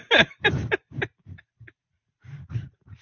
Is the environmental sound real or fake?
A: fake